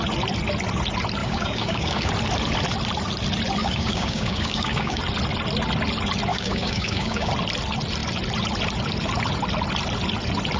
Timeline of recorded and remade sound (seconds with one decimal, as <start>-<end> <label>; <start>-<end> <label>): 0.0-1.2 recorded; 1.2-2.1 remade; 2.1-3.6 recorded; 3.6-5.0 remade; 5.0-6.3 recorded; 6.3-7.3 remade; 7.3-10.6 recorded